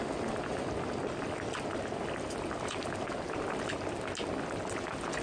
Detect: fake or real real